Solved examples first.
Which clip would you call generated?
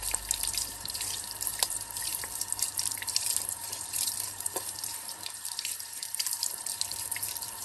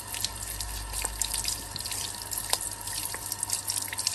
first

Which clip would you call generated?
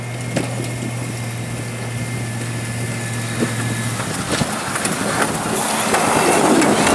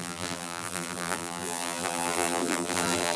second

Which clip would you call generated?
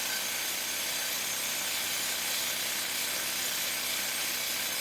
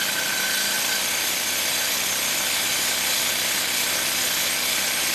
second